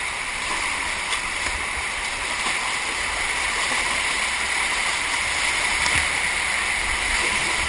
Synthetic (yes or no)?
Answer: no